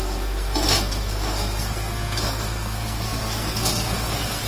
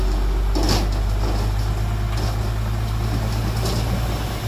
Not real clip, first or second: first